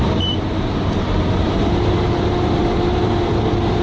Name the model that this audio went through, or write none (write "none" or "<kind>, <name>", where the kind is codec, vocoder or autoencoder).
vocoder, BigVGAN v2